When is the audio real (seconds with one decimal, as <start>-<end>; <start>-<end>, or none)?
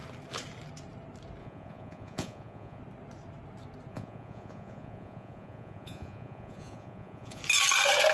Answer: 0.0-1.4; 2.8-3.9; 7.4-8.1